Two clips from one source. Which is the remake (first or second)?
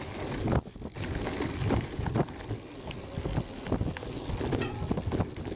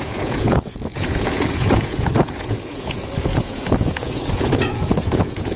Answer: second